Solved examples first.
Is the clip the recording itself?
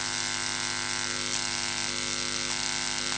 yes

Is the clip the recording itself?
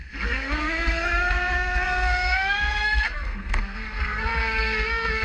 no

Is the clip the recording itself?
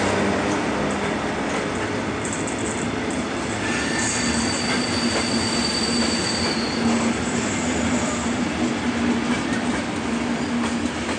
yes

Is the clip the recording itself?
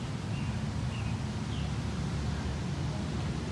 yes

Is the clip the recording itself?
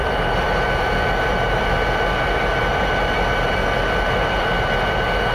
no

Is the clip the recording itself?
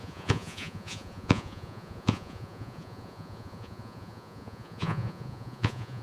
no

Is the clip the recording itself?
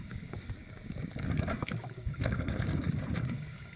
no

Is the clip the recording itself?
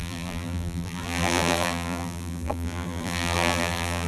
no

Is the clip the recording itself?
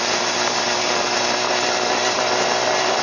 yes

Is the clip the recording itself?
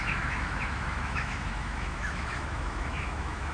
no